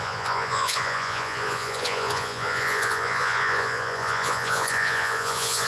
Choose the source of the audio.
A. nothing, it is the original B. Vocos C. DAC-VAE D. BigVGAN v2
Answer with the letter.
B